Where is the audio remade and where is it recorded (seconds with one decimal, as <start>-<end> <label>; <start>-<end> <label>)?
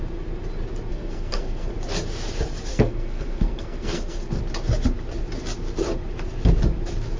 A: 0.0-0.9 recorded; 0.9-1.7 remade; 1.7-2.7 recorded; 2.7-4.4 remade; 4.4-7.2 recorded